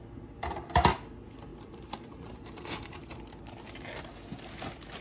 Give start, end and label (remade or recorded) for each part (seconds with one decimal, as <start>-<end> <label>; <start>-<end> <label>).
0.0-1.5 recorded; 1.5-3.6 remade; 3.6-5.0 recorded